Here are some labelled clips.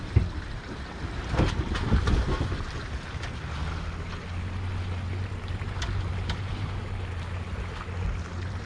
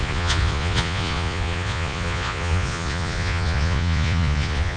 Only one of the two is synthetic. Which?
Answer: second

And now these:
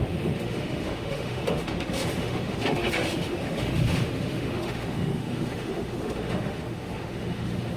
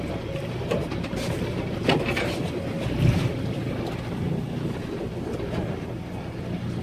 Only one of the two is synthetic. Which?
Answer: first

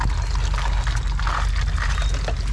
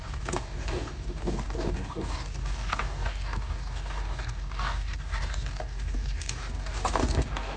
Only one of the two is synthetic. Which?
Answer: second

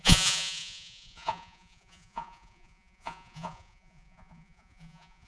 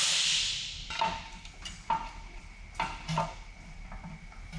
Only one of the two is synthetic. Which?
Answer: first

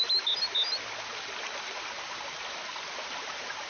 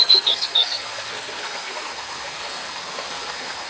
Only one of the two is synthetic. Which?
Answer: second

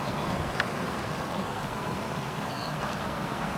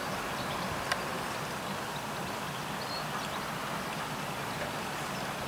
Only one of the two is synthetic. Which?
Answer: first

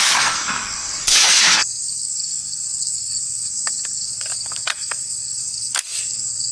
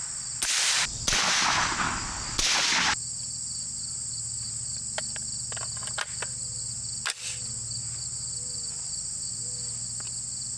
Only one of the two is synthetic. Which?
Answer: first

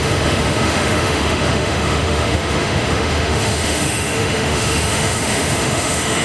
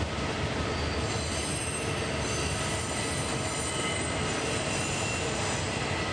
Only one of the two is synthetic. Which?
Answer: first